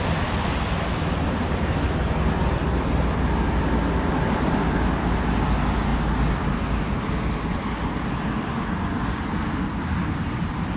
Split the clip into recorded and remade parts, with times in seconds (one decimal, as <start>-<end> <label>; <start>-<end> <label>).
0.0-10.8 recorded